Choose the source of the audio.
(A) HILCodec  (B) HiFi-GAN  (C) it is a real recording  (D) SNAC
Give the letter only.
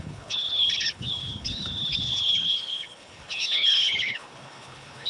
A